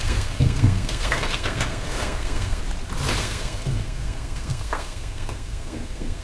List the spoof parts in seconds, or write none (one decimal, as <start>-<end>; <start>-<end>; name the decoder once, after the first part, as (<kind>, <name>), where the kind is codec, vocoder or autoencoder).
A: 0.0-2.6 (codec, SNAC); 3.2-6.2

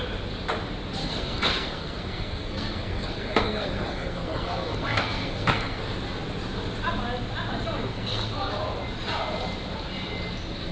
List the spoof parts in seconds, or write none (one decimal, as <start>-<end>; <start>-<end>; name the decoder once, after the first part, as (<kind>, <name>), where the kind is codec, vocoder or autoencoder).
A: 1.0-5.8 (codec, SNAC); 7.9-8.5

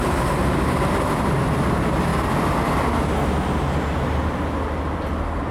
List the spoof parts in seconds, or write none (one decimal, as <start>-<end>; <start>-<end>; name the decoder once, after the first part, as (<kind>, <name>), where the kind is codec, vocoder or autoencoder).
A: 0.0-2.1 (vocoder, BigVGAN v2)

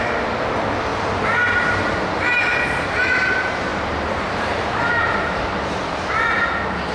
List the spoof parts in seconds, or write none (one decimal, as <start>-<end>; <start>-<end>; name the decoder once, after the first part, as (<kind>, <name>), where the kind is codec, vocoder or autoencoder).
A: 2.4-3.3 (vocoder, BigVGAN v2); 3.7-5.7